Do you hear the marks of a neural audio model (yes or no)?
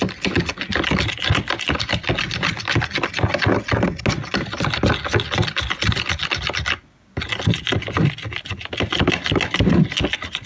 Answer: no